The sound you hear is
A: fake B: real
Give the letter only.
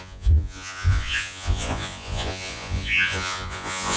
A